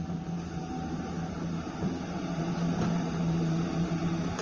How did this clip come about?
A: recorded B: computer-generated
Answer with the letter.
B